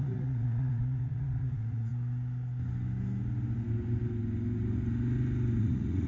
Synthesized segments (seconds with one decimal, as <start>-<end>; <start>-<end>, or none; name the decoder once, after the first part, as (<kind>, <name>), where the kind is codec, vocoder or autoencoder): 0.0-1.9 (vocoder, Vocos); 5.6-6.1